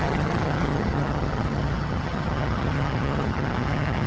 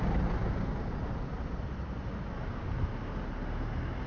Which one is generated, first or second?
first